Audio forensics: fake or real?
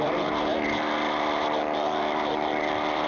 fake